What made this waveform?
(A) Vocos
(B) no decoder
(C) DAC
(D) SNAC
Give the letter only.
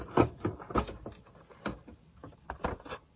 B